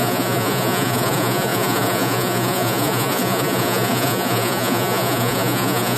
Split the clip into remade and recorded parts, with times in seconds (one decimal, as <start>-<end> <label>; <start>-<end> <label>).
0.0-6.0 remade